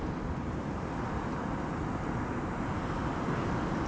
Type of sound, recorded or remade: recorded